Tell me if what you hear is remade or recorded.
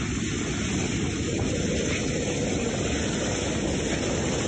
recorded